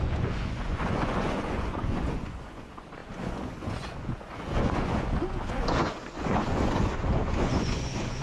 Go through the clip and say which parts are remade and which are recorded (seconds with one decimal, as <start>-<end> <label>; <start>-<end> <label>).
0.0-8.2 remade